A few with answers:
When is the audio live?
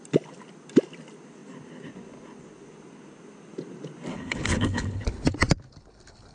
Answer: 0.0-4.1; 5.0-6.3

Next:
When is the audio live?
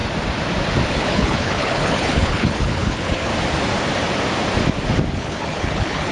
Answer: 0.0-0.9; 3.3-5.1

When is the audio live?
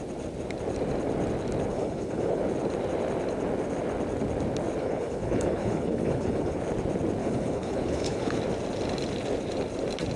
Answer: 0.0-1.7; 2.4-4.8; 6.6-7.2; 8.4-10.2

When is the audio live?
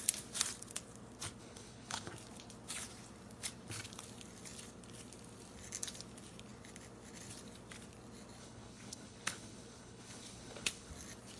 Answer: 0.0-1.4; 2.1-8.4; 10.9-11.4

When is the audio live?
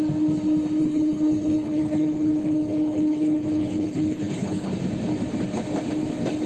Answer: 0.0-0.8; 4.7-6.5